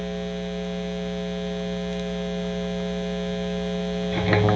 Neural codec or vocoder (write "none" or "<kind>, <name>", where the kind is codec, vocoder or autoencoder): none